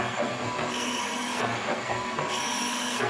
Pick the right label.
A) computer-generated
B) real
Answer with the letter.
A